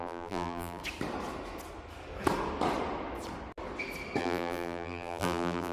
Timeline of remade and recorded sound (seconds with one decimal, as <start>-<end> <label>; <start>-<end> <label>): 0.0-0.8 remade; 0.8-4.2 recorded; 4.2-5.7 remade